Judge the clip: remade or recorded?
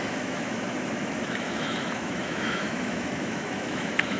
remade